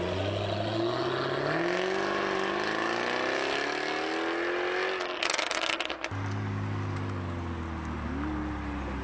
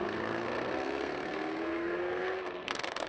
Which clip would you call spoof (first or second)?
second